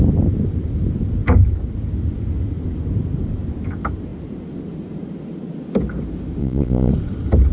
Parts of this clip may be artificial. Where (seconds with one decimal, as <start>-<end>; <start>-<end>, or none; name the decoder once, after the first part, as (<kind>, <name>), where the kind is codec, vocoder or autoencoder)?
6.4-6.9 (vocoder, Vocos)